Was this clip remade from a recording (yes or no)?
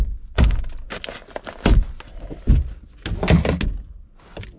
no